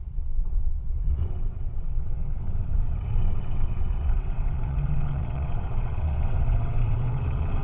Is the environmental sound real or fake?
fake